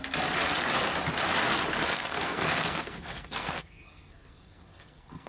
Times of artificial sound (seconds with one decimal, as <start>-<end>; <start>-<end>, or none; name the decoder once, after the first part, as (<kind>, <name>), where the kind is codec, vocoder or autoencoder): 1.9-5.3 (codec, SNAC)